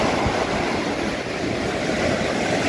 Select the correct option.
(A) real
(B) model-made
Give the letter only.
A